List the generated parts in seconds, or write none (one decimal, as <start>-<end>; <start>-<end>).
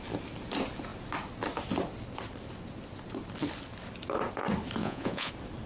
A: 4.8-5.3